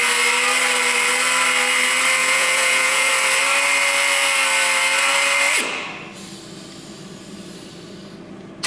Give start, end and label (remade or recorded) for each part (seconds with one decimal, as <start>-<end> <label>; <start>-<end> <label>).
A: 0.0-2.2 recorded; 2.2-3.1 remade; 3.1-8.7 recorded